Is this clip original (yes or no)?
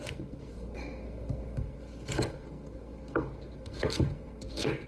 no